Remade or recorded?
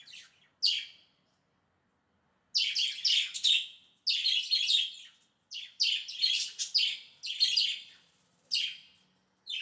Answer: recorded